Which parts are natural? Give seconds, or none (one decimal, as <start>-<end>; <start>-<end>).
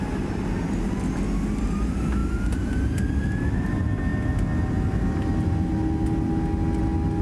0.0-7.2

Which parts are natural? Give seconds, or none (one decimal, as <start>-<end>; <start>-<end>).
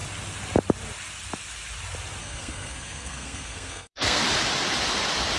0.0-2.2; 4.2-5.4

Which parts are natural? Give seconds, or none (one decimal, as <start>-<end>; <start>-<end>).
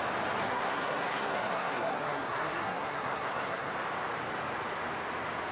0.0-0.4; 3.7-5.5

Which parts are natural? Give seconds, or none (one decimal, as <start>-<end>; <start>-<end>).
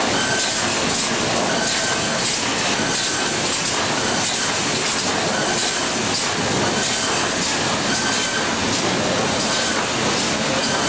0.0-10.9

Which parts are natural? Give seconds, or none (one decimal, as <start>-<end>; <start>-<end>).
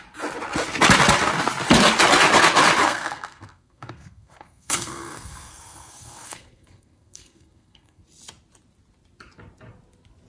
0.0-2.8; 8.0-10.3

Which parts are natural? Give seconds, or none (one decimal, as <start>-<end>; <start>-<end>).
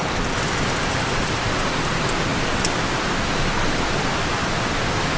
0.0-5.2